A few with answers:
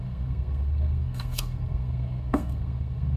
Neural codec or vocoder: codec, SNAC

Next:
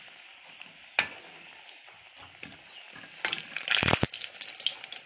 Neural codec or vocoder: none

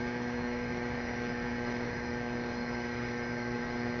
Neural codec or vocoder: codec, DAC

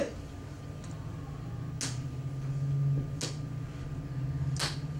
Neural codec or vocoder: none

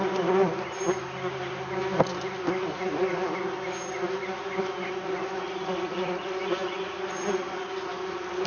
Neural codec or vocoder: none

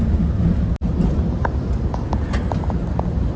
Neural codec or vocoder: none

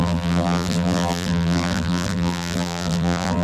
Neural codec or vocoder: vocoder, BigVGAN v2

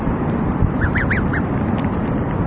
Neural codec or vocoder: vocoder, BigVGAN v2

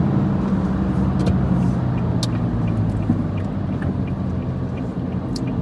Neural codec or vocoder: none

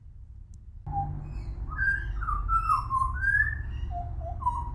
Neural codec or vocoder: none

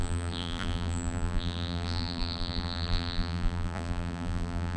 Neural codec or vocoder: vocoder, BigVGAN v2